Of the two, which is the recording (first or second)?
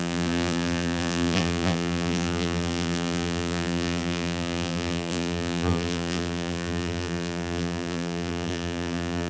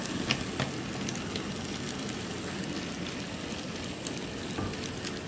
second